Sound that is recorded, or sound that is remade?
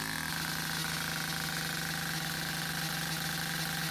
recorded